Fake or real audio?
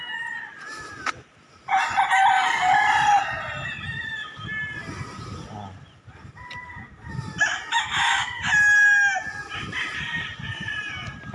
real